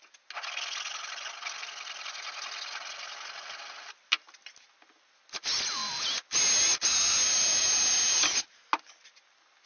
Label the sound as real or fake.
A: real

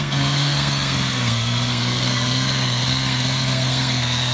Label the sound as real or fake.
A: fake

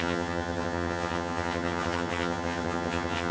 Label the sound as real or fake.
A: fake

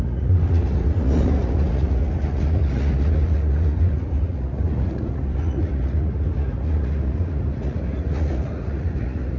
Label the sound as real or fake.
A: fake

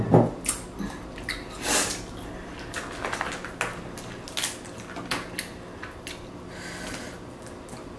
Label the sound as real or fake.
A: real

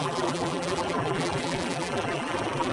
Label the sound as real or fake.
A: fake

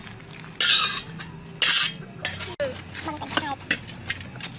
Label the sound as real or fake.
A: real